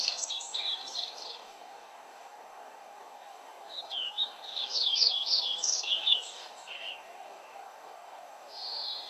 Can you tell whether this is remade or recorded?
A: remade